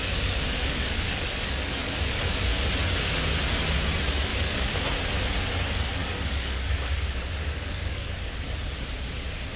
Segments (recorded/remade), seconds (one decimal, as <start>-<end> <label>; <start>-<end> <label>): 0.0-2.7 remade; 2.7-4.3 recorded; 4.3-4.8 remade; 4.8-6.0 recorded; 6.0-8.2 remade; 8.2-9.6 recorded